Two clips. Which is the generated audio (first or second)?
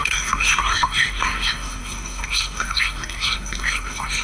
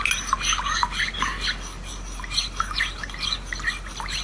first